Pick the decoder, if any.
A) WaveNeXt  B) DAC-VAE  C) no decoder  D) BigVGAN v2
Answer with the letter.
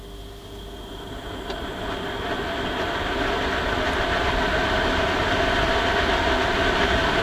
C